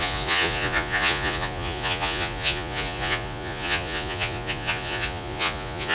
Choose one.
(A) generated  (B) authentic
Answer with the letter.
A